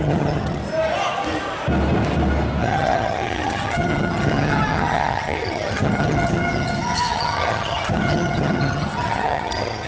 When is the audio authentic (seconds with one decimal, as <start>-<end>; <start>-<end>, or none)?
0.6-2.6